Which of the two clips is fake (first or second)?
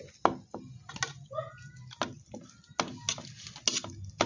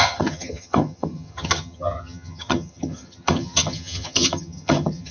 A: second